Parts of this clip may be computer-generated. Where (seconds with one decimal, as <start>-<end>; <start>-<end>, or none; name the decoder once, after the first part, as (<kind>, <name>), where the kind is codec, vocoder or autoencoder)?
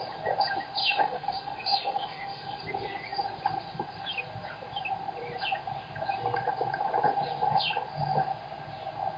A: 0.8-2.6 (autoencoder, DAC-VAE)